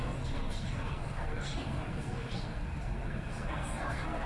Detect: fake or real fake